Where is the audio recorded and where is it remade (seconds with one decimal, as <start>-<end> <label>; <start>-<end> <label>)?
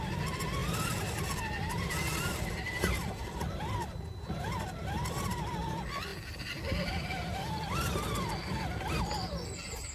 0.0-0.6 recorded; 0.6-3.7 remade; 3.7-9.9 recorded